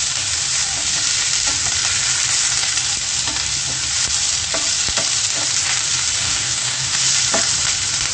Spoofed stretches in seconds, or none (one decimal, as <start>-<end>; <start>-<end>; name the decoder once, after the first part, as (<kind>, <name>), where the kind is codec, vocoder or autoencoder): 6.2-7.0 (codec, DAC)